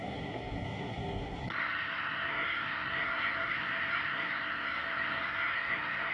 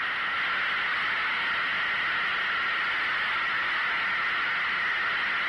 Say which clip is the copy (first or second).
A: first